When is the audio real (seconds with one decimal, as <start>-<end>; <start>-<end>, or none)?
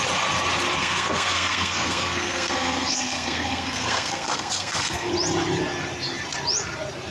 0.0-0.8; 5.1-7.1